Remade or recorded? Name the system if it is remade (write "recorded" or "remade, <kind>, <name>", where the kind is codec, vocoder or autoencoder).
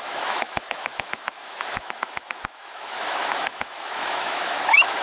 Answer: remade, autoencoder, DAC-VAE